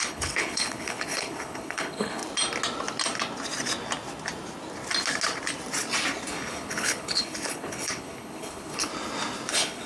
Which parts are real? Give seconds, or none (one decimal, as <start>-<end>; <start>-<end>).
2.2-6.3; 8.9-9.5